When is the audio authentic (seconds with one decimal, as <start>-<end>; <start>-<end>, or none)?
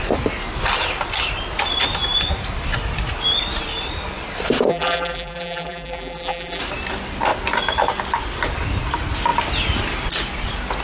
0.0-4.7; 6.6-10.8